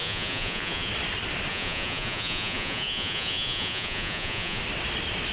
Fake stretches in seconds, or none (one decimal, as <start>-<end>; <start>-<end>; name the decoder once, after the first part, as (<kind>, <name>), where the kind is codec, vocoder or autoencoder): 0.0-0.9 (vocoder, Vocos); 1.5-4.6